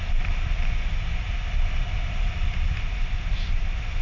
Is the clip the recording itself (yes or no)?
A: yes